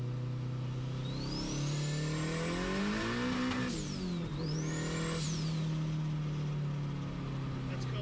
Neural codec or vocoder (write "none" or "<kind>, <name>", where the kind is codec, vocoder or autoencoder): none